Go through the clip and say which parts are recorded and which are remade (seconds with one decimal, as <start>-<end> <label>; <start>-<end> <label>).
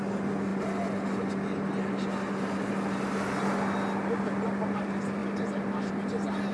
0.0-6.5 recorded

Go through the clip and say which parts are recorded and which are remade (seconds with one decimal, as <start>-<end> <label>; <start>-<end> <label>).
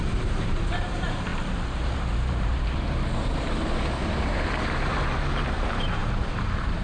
0.0-6.8 remade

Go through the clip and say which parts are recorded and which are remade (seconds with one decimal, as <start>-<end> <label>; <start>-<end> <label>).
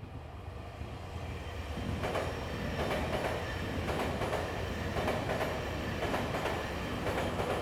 0.0-7.6 recorded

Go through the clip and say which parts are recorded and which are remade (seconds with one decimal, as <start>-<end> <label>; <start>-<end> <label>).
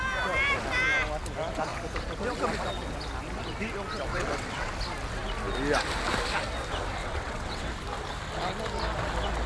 0.0-4.1 recorded; 4.1-4.7 remade; 4.7-7.0 recorded; 7.0-7.7 remade; 7.7-9.5 recorded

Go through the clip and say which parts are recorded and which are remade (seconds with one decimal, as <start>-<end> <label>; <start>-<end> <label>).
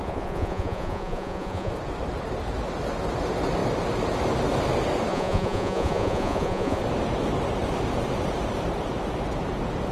0.0-1.7 remade; 1.7-5.1 recorded; 5.1-6.8 remade; 6.8-9.9 recorded